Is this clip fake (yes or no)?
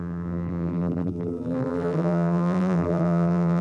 yes